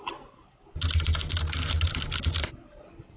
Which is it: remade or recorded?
recorded